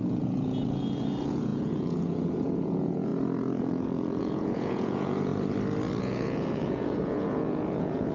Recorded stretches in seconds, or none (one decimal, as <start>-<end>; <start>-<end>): 3.1-4.2; 5.3-6.0